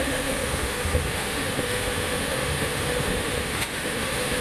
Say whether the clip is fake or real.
fake